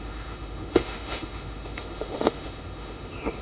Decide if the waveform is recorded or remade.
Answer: remade